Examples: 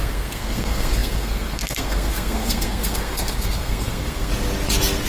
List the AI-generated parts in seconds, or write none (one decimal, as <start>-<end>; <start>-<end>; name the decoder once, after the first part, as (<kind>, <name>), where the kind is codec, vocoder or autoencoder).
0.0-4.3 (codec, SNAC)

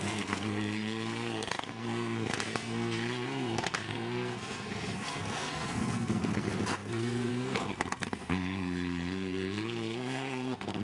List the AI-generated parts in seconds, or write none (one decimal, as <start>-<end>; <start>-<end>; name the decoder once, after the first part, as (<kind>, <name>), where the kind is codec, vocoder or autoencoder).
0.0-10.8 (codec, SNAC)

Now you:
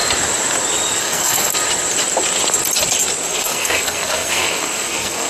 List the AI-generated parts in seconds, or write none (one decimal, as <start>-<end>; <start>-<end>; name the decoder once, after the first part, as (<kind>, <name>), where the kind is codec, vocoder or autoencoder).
1.0-1.5 (codec, SNAC); 3.3-5.3

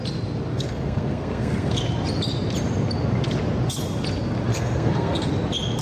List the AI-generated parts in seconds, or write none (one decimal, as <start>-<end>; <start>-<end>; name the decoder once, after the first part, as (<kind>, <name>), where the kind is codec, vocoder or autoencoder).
0.5-1.8 (codec, SNAC); 4.5-5.3